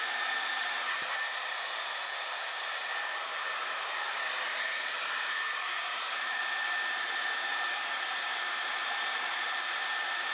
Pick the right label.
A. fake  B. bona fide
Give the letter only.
A